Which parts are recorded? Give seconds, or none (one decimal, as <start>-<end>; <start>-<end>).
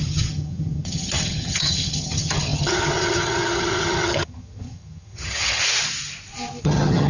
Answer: 5.6-6.6